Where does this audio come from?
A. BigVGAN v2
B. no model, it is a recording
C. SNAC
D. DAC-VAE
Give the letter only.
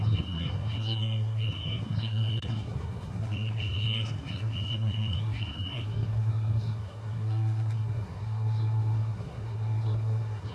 C